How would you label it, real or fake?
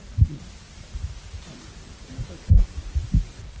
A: fake